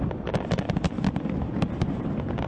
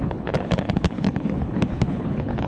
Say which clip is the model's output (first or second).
second